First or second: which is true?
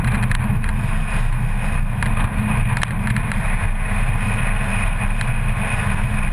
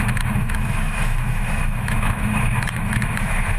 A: first